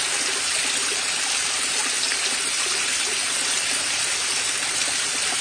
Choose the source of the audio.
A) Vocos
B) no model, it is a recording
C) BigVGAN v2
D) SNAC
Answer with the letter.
B